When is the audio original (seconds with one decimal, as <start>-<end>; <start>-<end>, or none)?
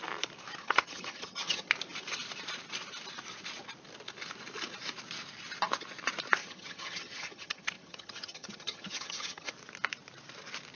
0.0-0.6; 1.7-6.4; 9.5-10.7